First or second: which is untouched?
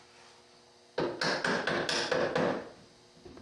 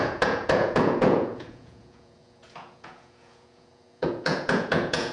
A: first